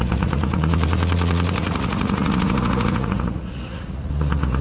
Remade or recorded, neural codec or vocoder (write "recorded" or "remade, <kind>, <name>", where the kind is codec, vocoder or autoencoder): remade, vocoder, Vocos